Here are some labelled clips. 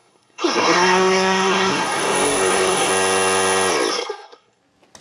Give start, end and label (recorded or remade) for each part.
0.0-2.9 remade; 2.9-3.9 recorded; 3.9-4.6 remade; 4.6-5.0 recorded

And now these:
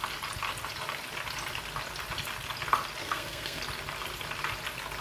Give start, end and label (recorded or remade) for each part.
0.0-3.0 recorded; 3.0-3.6 remade; 3.6-5.0 recorded

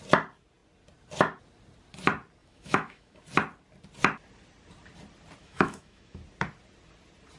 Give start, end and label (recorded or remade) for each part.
0.0-2.4 recorded; 2.4-3.2 remade; 3.2-5.4 recorded; 5.4-6.2 remade; 6.2-7.4 recorded

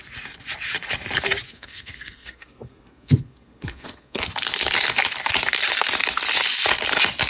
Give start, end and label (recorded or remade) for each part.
0.0-1.5 recorded; 1.5-4.2 remade; 4.2-7.3 recorded

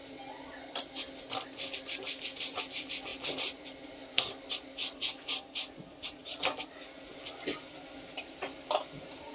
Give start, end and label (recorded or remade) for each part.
0.0-1.7 recorded; 1.7-6.2 remade; 6.2-7.1 recorded; 7.1-9.3 remade